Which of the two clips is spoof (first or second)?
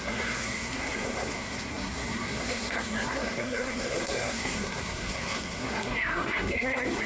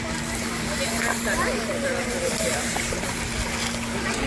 first